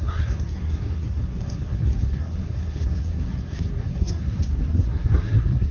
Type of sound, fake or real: fake